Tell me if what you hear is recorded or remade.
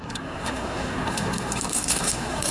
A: remade